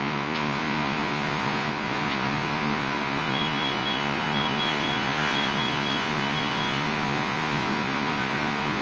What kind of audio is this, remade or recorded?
remade